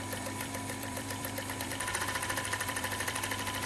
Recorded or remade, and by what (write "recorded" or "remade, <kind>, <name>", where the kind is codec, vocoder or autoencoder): remade, vocoder, BigVGAN v2